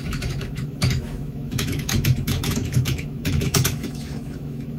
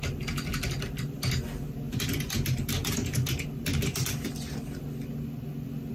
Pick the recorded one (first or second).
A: second